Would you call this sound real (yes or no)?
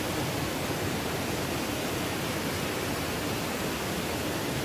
yes